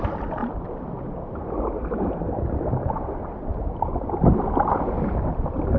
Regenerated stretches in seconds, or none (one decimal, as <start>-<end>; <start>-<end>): none